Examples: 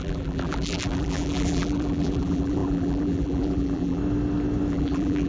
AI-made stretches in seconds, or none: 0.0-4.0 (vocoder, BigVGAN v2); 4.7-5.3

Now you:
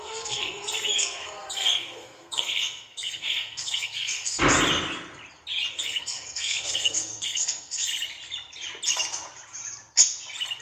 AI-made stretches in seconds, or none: 0.0-4.4 (codec, SNAC); 5.7-7.9